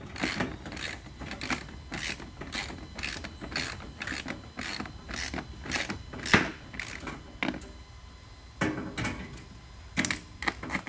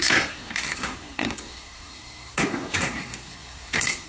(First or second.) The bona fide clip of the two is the first